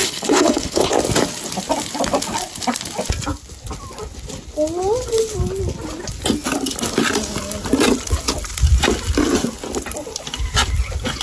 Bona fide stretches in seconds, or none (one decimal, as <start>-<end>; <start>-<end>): 0.9-11.2